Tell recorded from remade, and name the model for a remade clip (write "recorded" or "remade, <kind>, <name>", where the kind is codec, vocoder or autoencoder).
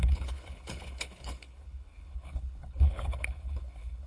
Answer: remade, codec, HILCodec